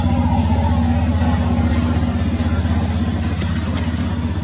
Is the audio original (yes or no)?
yes